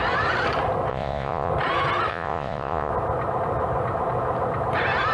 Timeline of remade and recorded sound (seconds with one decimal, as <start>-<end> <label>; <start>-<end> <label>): 0.0-0.9 recorded; 0.9-1.5 remade; 1.5-2.1 recorded; 2.1-2.9 remade; 2.9-5.1 recorded